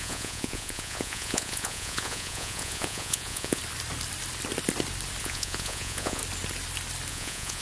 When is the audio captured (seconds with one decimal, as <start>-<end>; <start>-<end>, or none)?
3.6-5.2; 6.2-7.1